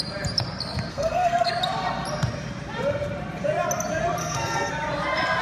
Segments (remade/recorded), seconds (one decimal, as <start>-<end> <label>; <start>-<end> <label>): 0.0-0.9 recorded; 0.9-1.5 remade; 1.5-4.2 recorded; 4.2-4.7 remade; 4.7-5.4 recorded